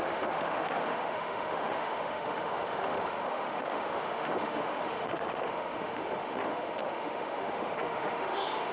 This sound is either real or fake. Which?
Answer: fake